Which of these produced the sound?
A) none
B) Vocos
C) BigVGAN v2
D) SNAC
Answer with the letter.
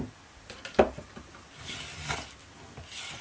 A